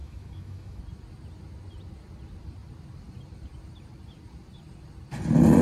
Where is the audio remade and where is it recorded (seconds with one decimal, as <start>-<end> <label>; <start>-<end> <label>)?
0.0-0.8 remade; 0.8-5.6 recorded